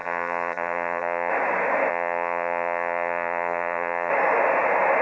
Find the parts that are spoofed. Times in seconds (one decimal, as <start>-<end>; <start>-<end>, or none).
0.0-1.3; 1.9-4.1

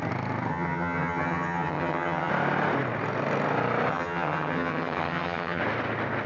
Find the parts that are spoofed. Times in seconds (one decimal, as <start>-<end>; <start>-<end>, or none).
0.5-2.3; 3.9-5.6

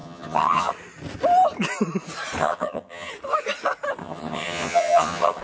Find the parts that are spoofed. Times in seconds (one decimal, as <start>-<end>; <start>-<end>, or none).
0.0-0.7; 2.4-3.1; 4.0-5.4

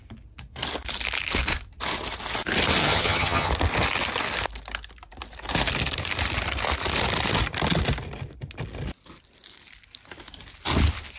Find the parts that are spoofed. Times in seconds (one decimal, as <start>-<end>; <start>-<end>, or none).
2.8-3.5

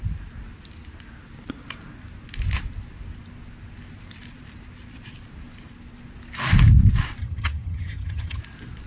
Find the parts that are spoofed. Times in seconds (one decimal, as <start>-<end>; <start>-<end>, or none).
7.2-8.4

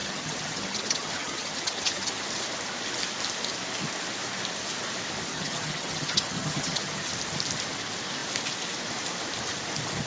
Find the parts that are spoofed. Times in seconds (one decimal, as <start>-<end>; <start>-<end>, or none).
0.0-2.1; 5.3-7.1